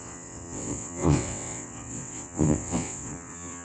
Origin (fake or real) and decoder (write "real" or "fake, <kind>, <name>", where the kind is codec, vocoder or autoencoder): fake, vocoder, WaveNeXt